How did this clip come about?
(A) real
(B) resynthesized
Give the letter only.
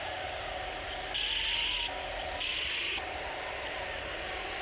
A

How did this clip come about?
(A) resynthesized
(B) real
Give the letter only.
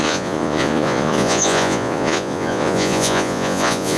A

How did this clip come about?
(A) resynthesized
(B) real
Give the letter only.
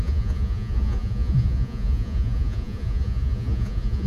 A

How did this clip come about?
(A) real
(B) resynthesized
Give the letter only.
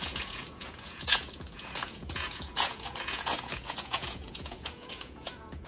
B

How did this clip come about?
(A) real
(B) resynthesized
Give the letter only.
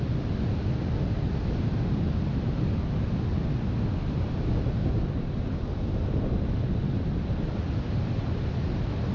A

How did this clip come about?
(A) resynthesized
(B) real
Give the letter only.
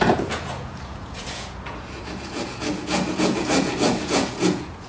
A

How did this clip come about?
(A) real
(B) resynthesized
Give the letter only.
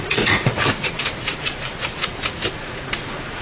B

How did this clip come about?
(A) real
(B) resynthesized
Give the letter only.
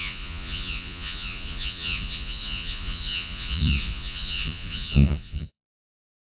B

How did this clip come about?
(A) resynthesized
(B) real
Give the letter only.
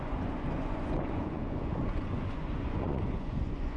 A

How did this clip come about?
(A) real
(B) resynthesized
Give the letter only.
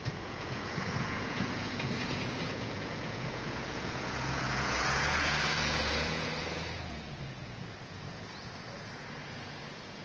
B